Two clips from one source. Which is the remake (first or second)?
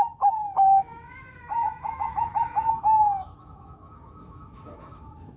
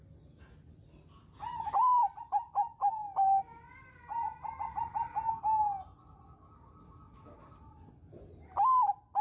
first